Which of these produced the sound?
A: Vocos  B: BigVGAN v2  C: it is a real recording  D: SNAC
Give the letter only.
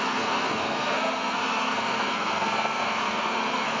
D